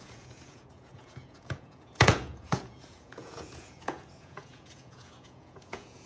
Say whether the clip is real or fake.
fake